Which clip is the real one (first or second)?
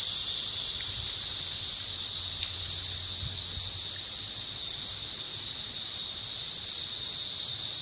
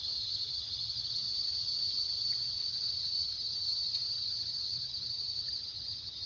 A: first